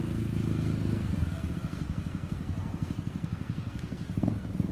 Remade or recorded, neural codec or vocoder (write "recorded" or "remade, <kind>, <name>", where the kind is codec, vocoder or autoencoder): remade, codec, SNAC